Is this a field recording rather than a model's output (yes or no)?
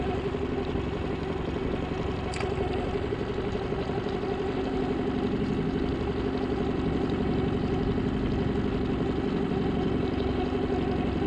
yes